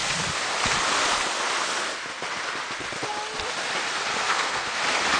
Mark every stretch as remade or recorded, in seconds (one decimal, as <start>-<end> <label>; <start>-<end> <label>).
0.0-4.2 recorded; 4.2-4.8 remade; 4.8-5.2 recorded